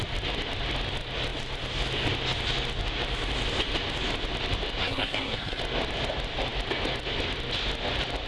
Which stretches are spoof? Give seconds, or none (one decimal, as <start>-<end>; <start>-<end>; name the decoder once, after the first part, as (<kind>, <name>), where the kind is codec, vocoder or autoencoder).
4.8-5.6 (codec, SNAC)